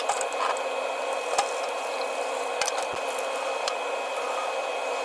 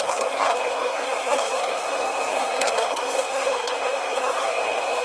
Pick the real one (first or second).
first